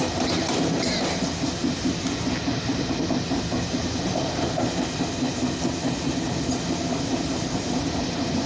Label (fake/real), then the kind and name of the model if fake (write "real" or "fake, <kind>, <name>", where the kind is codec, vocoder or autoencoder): real